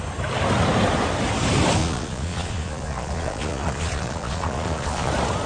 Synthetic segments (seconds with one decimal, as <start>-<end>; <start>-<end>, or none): 1.8-5.1